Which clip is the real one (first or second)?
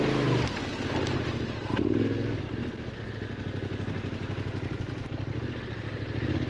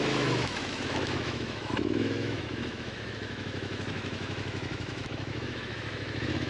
first